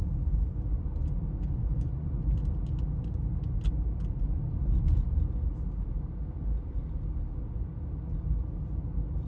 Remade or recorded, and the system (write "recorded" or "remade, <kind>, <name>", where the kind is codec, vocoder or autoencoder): recorded